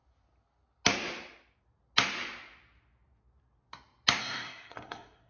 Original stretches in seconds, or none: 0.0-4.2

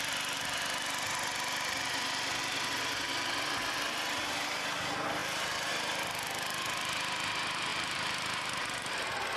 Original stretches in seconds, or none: 0.0-5.2; 5.7-7.7; 8.9-9.4

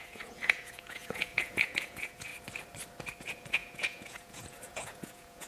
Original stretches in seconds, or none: 2.3-3.2

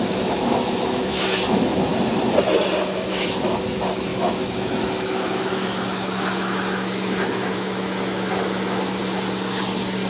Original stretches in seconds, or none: 1.9-2.8; 9.0-10.1

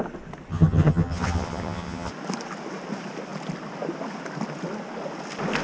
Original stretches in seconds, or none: 0.0-0.5; 2.1-5.6

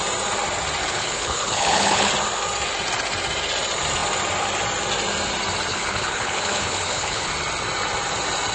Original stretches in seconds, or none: 0.0-0.8; 2.1-5.7; 7.3-8.5

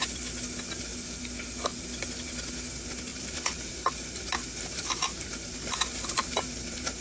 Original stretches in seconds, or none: 0.0-3.1